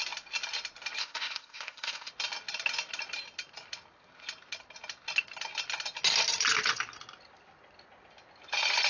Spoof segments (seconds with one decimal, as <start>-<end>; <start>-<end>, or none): 1.0-2.1